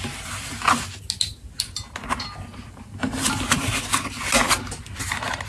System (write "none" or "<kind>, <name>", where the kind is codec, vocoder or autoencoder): none